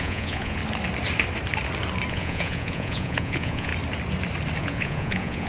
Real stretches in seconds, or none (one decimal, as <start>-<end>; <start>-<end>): 0.6-2.1; 3.7-4.6